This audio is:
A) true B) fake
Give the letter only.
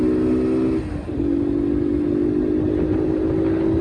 A